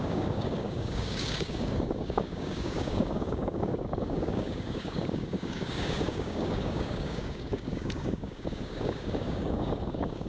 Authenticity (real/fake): fake